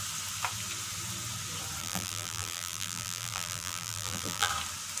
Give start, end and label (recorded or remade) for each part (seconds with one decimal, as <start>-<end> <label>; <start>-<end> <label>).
0.0-1.8 recorded; 1.8-4.5 remade; 4.5-5.0 recorded